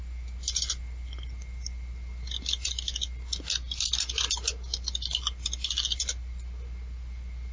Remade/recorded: recorded